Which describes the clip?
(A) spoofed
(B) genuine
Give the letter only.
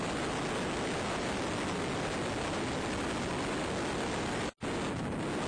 B